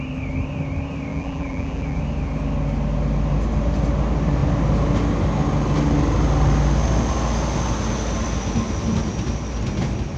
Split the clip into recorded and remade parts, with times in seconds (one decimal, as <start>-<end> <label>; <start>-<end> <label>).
0.0-1.1 recorded; 1.1-2.0 remade; 2.0-10.2 recorded